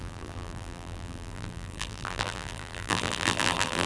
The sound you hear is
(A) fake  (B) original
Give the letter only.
A